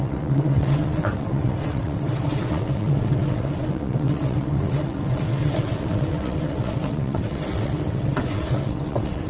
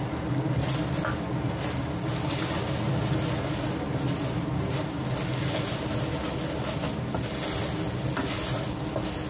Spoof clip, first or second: first